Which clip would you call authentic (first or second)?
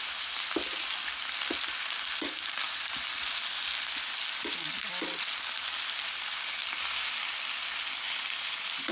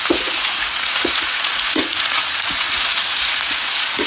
first